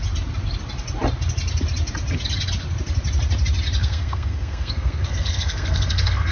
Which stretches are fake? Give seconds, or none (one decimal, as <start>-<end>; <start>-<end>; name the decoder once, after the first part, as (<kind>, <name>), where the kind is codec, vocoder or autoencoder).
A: 3.8-6.3 (codec, SNAC)